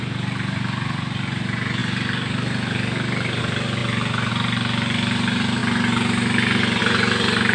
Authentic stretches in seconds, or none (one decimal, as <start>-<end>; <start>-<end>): 0.0-7.5